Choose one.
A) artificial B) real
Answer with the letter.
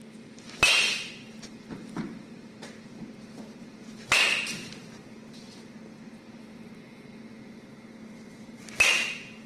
B